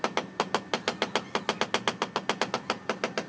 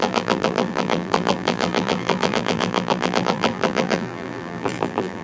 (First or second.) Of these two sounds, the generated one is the second